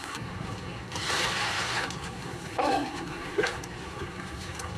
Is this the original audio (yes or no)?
no